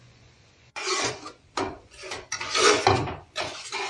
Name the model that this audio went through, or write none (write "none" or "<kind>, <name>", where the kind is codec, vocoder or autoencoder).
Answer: vocoder, Vocos